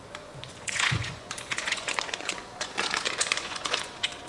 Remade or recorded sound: remade